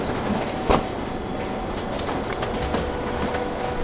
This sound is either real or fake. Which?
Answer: real